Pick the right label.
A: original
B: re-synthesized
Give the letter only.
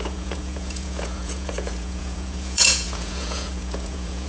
B